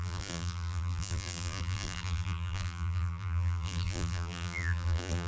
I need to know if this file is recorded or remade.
remade